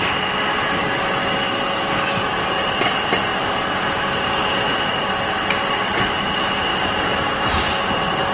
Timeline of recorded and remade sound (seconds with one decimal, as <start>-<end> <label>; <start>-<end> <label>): 0.0-0.8 recorded; 0.8-2.4 remade; 2.4-6.7 recorded; 6.7-7.7 remade; 7.7-8.3 recorded